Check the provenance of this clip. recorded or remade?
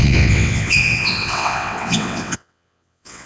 remade